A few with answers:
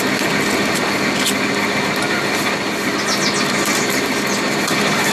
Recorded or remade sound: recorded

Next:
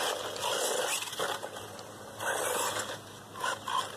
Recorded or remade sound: recorded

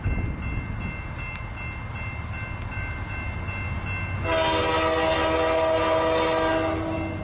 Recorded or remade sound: recorded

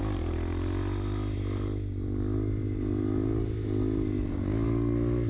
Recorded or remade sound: recorded